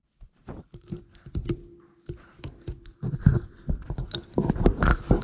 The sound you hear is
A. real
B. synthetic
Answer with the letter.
A